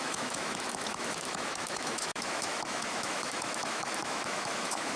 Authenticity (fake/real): fake